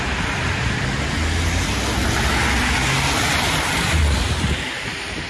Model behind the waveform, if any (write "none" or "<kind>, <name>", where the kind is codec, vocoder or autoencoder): none